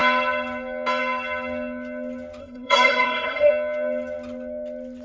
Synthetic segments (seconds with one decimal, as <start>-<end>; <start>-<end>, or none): 2.4-3.5